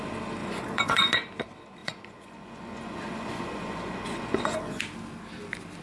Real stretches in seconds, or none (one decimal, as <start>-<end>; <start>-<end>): 0.0-0.4; 1.1-1.8; 4.8-5.8